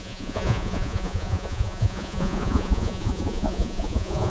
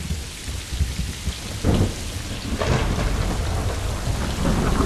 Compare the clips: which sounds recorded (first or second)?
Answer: second